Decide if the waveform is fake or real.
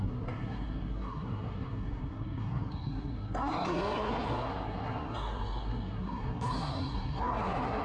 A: fake